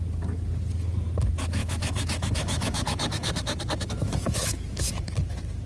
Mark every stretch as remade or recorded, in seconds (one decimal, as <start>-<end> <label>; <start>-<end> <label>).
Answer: 0.0-1.6 recorded; 1.6-5.0 remade; 5.0-5.7 recorded